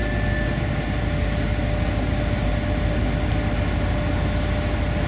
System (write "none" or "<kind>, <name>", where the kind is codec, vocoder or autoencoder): none